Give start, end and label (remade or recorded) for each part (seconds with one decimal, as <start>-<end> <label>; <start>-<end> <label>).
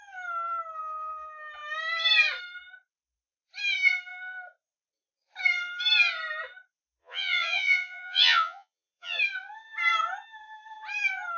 0.0-7.0 recorded; 7.0-9.2 remade; 9.2-11.4 recorded